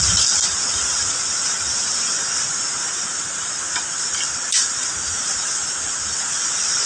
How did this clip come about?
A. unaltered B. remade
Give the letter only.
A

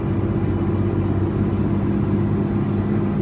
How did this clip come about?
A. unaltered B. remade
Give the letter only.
A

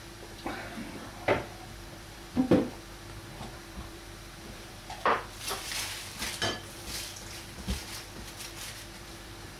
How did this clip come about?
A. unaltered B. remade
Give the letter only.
B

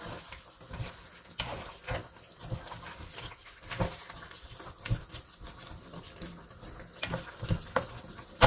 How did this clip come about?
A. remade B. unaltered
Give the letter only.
B